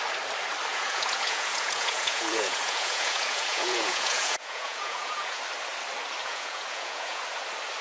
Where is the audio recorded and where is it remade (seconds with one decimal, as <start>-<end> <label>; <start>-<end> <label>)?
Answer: 0.0-0.7 recorded; 0.7-5.4 remade; 5.4-6.2 recorded; 6.2-7.2 remade; 7.2-7.8 recorded